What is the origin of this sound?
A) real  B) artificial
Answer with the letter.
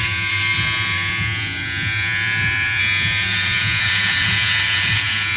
B